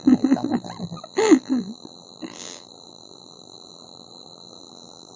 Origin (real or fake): fake